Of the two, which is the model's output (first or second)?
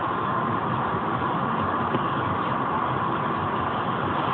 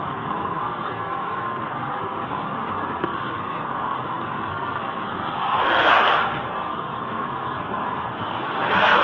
second